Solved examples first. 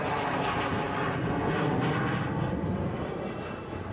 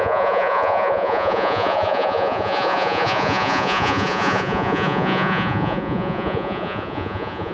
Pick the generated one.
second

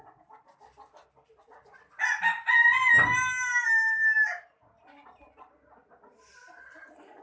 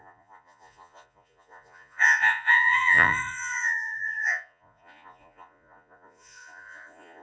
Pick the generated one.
second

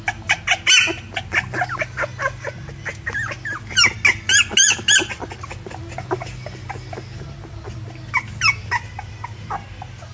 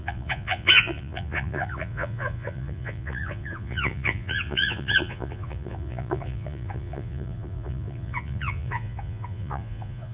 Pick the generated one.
second